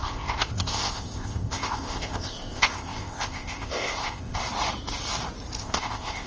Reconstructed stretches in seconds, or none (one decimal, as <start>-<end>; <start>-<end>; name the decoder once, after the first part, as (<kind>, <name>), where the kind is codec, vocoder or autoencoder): 0.0-4.4 (codec, ZipCodec); 5.6-6.3